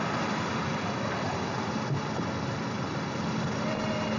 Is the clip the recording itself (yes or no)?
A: yes